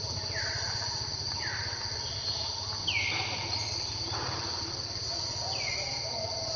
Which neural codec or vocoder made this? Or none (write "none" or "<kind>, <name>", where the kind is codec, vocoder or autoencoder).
none